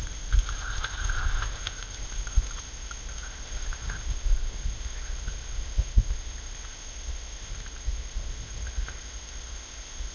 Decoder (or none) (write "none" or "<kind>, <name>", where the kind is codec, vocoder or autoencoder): codec, ZipCodec